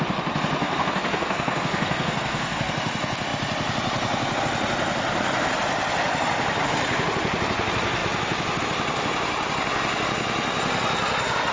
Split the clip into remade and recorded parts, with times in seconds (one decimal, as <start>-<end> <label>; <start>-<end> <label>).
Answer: 0.0-0.6 recorded; 0.6-2.7 remade; 2.7-11.5 recorded